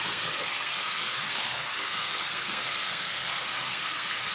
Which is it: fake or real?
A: fake